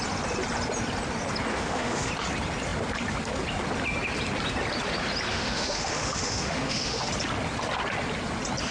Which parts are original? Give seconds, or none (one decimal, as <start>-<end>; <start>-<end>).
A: 0.0-1.5; 2.1-5.3; 7.1-8.7